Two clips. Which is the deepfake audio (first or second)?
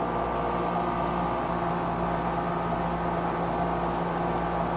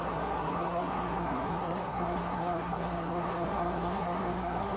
second